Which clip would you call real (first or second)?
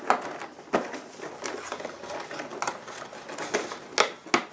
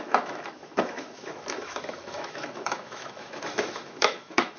first